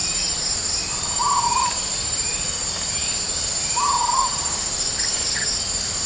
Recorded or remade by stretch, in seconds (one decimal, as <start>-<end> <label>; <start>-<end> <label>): 0.0-6.1 remade